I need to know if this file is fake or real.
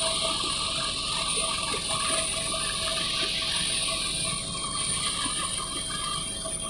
real